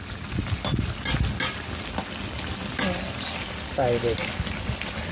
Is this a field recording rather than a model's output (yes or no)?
yes